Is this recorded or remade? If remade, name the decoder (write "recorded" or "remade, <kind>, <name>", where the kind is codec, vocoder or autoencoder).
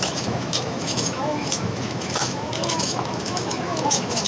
remade, autoencoder, DAC-VAE